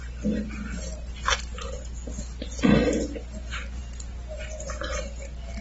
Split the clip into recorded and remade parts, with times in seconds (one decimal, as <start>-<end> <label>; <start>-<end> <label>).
0.0-5.6 recorded